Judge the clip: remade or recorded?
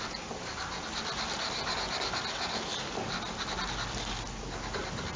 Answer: recorded